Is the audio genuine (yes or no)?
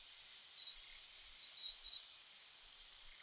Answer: yes